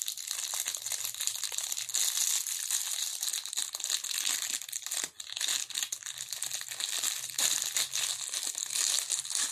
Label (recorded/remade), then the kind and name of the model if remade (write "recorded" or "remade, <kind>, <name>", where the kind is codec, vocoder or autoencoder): recorded